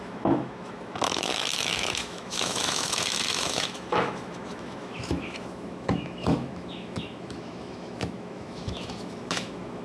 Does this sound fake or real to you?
fake